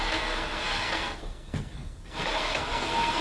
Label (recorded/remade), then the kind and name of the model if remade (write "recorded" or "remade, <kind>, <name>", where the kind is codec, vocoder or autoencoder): remade, codec, SNAC